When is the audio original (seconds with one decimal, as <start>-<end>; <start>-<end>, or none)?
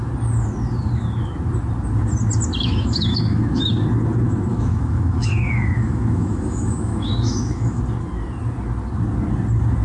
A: 0.0-2.6; 3.7-4.5; 7.8-9.8